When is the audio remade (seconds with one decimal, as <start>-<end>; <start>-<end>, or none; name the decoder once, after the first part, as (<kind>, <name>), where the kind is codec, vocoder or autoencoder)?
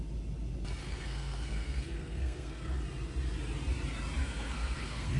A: 0.8-2.8 (codec, SNAC); 4.2-5.2